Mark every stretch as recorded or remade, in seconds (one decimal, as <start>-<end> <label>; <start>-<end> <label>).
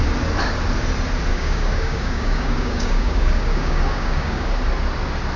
0.0-1.3 recorded; 1.3-4.5 remade; 4.5-5.4 recorded